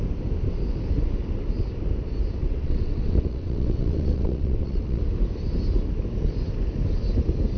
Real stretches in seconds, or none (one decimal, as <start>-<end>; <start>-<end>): 0.0-2.4; 5.0-7.6